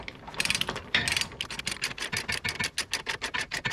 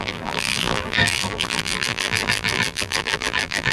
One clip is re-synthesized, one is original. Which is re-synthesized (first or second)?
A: second